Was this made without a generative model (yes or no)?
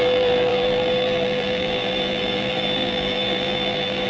no